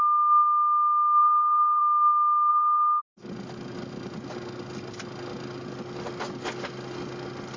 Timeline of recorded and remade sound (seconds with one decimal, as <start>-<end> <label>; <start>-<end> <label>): 0.0-1.2 recorded; 1.2-1.8 remade; 1.8-2.5 recorded; 2.5-3.0 remade; 3.0-7.6 recorded